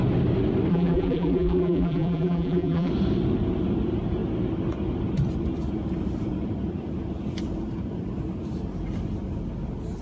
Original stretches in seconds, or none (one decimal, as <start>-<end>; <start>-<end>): 0.0-0.7; 2.9-10.0